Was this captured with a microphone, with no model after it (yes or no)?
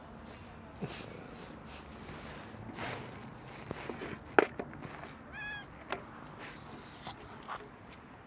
yes